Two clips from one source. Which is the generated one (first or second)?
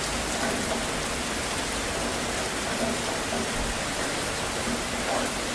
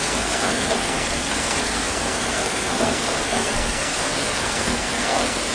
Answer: second